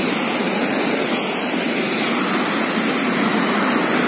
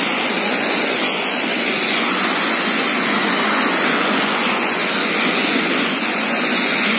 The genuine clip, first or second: first